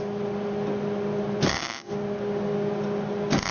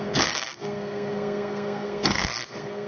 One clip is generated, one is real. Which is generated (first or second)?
second